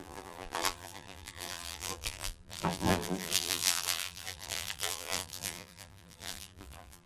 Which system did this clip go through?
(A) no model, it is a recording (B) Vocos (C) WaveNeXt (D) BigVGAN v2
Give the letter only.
D